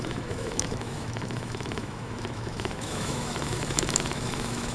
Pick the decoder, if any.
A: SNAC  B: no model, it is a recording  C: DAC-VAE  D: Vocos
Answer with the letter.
C